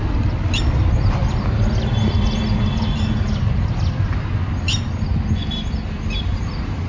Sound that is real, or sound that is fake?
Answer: real